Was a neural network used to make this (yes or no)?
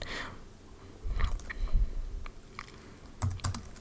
no